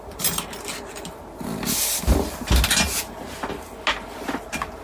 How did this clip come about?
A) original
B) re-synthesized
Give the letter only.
A